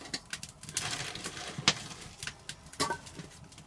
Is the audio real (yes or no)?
yes